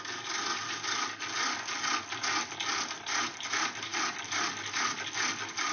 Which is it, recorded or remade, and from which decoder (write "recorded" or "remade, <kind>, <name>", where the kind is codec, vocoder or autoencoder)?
recorded